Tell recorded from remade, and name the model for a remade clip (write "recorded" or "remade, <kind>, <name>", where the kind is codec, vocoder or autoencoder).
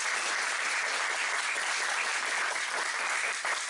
recorded